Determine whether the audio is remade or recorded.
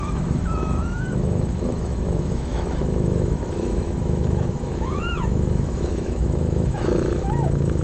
remade